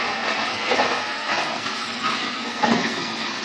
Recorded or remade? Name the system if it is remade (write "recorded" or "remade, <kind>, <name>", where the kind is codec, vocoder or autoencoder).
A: remade, codec, SNAC